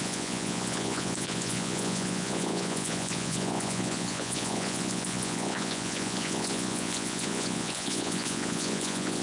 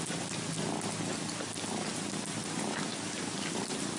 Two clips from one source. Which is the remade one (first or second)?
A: first